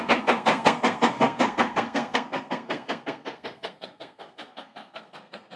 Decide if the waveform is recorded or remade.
remade